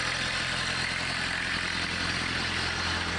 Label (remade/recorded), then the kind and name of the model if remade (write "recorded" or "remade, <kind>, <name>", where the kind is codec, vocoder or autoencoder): recorded